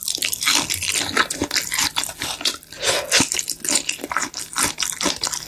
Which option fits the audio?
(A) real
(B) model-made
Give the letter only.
A